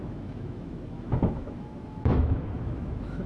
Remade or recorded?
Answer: remade